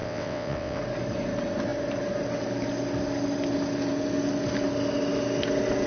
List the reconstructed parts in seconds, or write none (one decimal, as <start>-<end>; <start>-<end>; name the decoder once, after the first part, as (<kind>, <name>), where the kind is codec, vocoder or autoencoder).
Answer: 0.0-0.8 (vocoder, WaveNeXt)